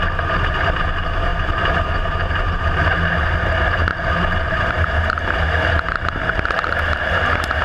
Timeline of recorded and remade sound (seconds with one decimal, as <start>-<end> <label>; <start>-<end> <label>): 0.0-3.9 recorded; 3.9-7.6 remade